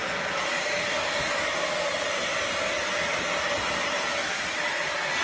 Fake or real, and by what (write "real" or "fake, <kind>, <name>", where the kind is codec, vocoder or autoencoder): real